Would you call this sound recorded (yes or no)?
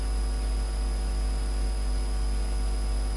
yes